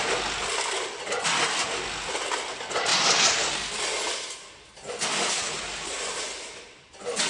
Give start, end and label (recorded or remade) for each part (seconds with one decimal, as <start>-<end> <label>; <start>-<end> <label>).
0.0-7.3 recorded